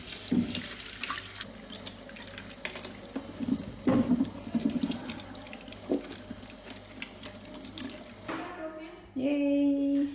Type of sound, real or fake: real